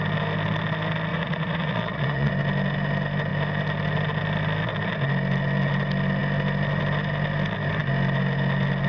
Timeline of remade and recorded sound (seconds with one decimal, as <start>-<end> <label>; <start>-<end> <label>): 0.0-1.1 recorded; 1.1-2.3 remade; 2.3-8.9 recorded